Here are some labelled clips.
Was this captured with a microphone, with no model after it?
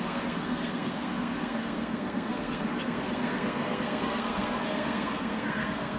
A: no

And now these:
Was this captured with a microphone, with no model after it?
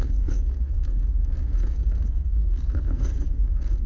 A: no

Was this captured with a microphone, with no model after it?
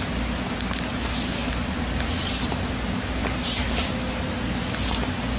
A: yes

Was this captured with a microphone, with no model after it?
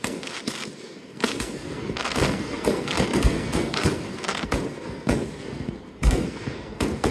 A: no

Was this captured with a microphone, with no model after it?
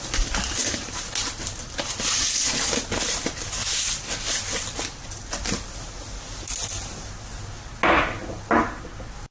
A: yes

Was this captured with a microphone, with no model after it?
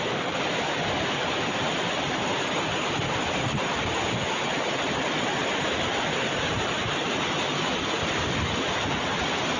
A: yes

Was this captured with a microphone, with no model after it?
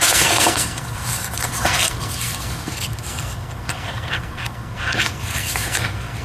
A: no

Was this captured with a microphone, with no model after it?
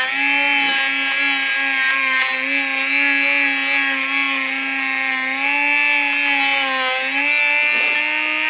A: yes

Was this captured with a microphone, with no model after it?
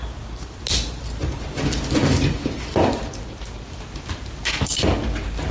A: yes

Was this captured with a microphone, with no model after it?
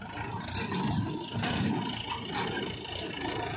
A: yes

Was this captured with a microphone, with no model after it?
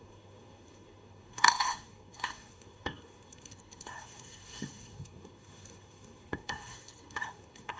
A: no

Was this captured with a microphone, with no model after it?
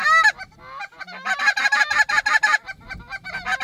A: yes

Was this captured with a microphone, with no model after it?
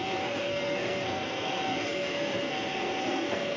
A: no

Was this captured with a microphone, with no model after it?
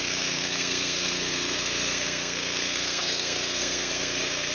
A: no